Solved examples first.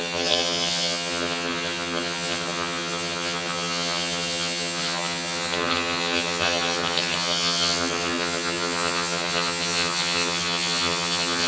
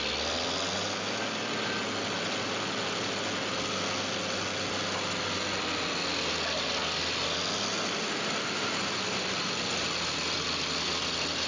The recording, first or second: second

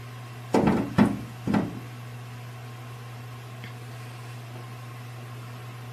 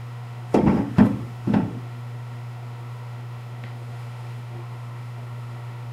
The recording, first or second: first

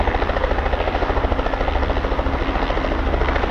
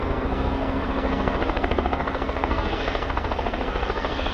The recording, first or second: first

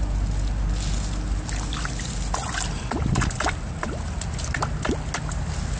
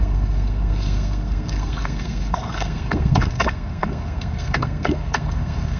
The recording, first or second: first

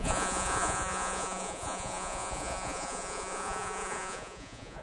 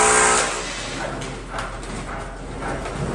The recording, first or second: second